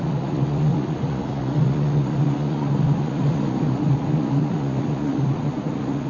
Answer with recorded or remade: remade